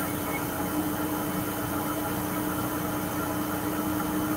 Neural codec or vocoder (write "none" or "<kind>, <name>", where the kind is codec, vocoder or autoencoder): none